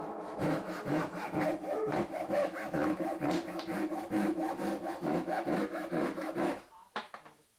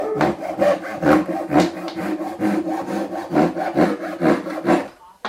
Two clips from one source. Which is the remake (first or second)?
first